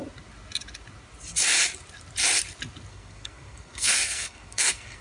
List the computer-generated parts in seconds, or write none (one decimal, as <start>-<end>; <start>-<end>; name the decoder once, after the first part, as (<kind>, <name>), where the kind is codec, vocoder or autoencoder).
2.9-5.0 (codec, SNAC)

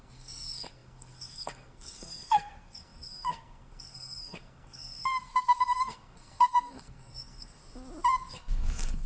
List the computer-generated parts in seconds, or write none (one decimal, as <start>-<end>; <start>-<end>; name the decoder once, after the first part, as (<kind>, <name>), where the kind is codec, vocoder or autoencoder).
0.0-7.6 (codec, SNAC); 8.3-9.1

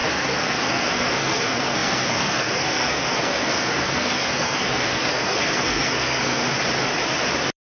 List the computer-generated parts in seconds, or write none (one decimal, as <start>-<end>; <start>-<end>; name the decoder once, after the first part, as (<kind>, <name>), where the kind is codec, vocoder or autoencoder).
0.0-6.4 (codec, SNAC)

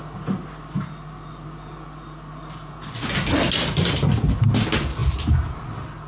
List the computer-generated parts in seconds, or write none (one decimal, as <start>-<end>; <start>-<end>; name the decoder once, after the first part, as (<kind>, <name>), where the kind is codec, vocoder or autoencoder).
none

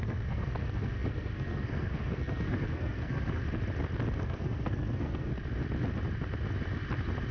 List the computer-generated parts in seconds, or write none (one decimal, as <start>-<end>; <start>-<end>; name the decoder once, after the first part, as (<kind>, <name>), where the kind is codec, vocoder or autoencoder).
0.0-3.4 (codec, SNAC); 4.2-5.3